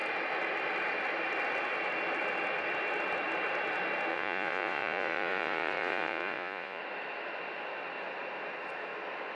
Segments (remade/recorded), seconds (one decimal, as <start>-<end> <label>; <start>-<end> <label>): 0.0-4.1 recorded; 4.1-6.8 remade; 6.8-9.4 recorded